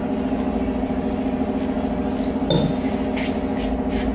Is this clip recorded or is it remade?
recorded